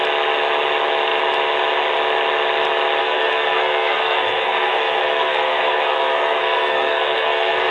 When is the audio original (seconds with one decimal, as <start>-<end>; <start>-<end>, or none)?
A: 0.0-3.0